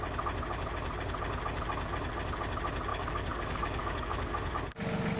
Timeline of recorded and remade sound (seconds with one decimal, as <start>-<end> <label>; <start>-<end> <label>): 0.0-2.9 recorded; 2.9-4.5 remade; 4.5-5.2 recorded

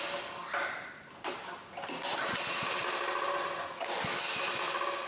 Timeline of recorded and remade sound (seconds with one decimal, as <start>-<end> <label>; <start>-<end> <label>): 0.0-5.1 recorded

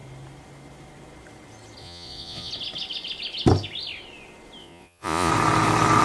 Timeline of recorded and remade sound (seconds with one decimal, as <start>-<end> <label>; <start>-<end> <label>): 0.0-1.8 recorded; 1.8-2.5 remade; 2.5-4.6 recorded; 4.6-5.3 remade; 5.3-6.0 recorded

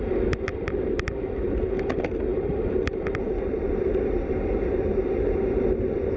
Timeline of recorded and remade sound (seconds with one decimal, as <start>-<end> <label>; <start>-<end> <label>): 0.0-0.5 recorded; 0.5-1.6 remade; 1.6-2.3 recorded; 2.3-6.2 remade

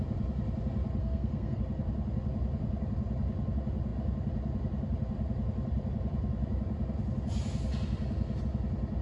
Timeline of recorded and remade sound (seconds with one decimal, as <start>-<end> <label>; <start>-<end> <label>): 0.0-1.0 recorded; 1.0-1.6 remade; 1.6-9.0 recorded

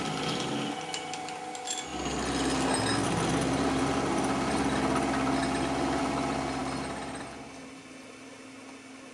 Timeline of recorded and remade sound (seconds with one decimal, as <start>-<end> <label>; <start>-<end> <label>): 0.0-9.1 recorded

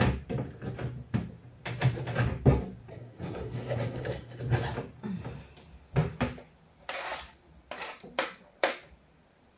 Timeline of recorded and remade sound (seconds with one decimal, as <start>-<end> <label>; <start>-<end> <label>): 0.0-2.9 recorded; 2.9-4.4 remade; 4.4-9.6 recorded

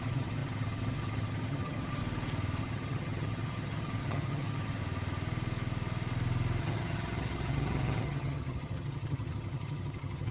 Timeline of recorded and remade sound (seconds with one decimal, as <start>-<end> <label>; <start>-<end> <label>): 0.0-2.0 remade; 2.0-2.6 recorded; 2.6-4.8 remade; 4.8-6.6 recorded; 6.6-10.3 remade